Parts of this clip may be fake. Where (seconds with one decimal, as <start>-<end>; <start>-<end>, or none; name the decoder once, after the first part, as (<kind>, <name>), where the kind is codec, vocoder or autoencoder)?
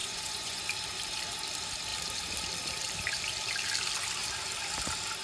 0.0-0.6 (vocoder, Vocos)